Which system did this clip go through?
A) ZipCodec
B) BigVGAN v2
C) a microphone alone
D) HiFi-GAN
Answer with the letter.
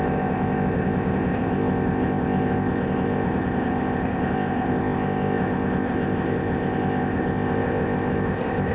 A